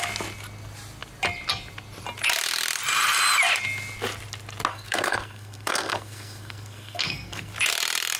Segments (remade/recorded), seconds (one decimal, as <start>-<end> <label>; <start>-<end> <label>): 0.0-4.7 recorded; 4.7-7.5 remade; 7.5-8.2 recorded